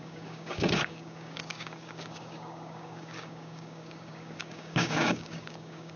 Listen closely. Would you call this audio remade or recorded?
remade